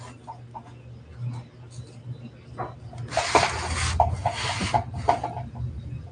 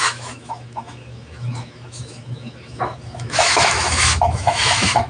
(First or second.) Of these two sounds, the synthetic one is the second